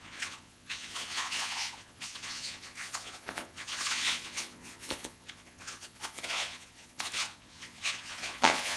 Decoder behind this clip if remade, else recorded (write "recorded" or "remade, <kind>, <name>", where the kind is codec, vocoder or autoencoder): remade, vocoder, Vocos